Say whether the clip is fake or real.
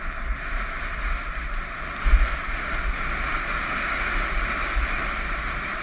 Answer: real